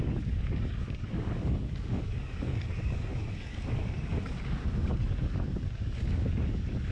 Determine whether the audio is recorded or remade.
remade